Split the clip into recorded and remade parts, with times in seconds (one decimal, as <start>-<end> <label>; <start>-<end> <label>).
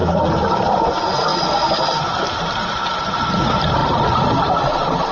0.0-5.1 recorded